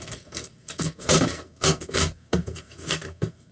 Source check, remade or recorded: remade